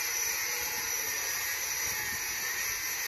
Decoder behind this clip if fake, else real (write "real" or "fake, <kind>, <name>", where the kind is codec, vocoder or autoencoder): fake, vocoder, BigVGAN v2